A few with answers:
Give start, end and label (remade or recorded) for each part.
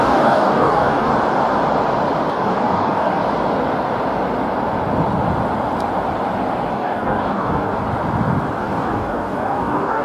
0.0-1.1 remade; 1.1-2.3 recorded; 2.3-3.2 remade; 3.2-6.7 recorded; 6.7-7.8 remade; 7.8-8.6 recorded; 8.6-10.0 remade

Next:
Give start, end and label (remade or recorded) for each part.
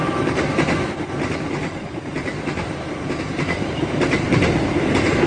0.0-5.3 recorded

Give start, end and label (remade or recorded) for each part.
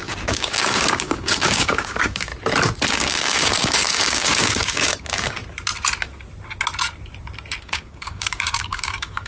0.0-2.3 remade; 2.3-2.9 recorded; 2.9-5.4 remade; 5.4-7.6 recorded; 7.6-9.3 remade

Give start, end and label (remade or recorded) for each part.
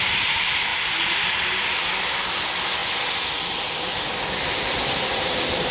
0.0-5.7 recorded